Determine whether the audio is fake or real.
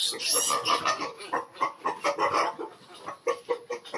real